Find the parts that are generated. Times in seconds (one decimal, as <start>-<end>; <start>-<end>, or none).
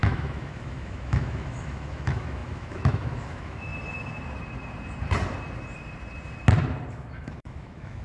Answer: 0.0-3.7; 6.9-8.0